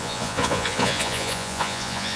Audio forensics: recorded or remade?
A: remade